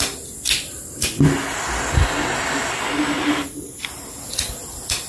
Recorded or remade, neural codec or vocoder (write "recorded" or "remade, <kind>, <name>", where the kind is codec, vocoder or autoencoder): recorded